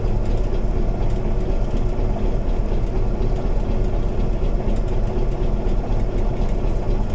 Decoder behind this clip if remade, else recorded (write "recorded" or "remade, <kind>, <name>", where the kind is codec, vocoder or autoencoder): recorded